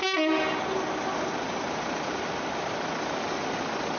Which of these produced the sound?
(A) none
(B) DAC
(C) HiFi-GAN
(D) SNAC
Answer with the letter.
A